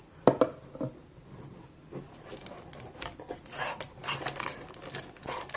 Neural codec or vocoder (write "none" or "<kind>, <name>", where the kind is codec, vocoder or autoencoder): none